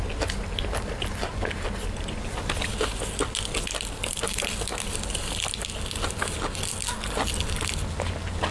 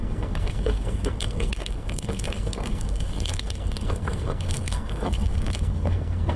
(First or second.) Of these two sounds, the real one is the first